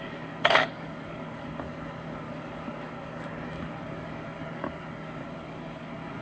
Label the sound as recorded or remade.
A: remade